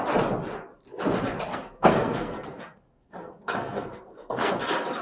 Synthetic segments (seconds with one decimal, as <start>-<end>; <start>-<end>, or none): 1.5-4.5